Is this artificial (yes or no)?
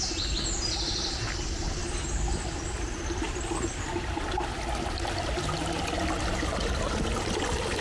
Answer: no